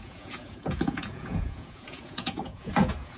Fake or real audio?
fake